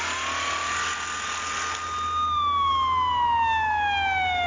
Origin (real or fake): real